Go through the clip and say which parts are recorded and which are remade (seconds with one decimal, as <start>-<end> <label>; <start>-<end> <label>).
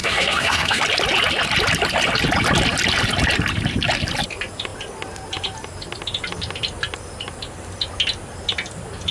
0.0-0.8 remade; 0.8-9.1 recorded